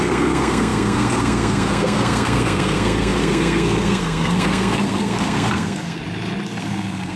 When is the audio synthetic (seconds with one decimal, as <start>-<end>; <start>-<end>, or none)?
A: 0.0-6.0; 6.6-7.2